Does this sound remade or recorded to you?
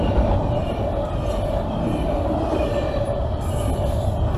recorded